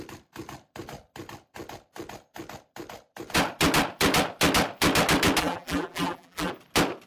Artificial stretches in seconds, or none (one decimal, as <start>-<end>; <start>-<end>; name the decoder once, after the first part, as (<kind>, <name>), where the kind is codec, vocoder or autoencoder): 5.4-6.5 (vocoder, BigVGAN v2)